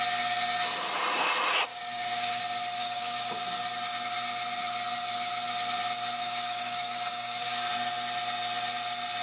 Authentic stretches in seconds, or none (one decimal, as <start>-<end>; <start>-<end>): 0.0-1.7; 2.4-2.8; 3.3-6.2; 7.7-9.2